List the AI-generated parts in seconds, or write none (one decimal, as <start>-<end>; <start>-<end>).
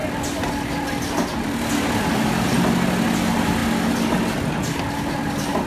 none